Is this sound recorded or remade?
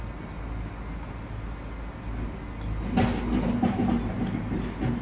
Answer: recorded